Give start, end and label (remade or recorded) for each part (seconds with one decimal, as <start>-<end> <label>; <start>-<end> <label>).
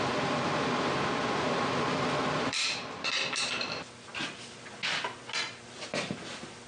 0.0-0.5 remade; 0.5-1.9 recorded; 1.9-4.1 remade; 4.1-5.6 recorded; 5.6-6.7 remade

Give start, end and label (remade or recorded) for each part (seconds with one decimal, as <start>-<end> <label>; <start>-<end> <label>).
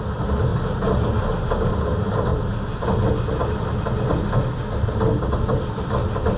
0.0-6.4 recorded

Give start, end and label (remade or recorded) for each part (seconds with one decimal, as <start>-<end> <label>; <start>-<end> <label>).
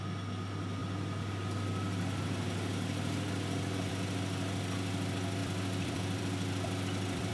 0.0-5.4 recorded; 5.4-7.3 remade